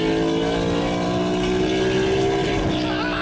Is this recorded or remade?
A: recorded